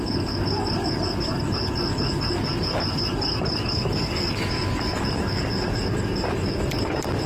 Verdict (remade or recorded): recorded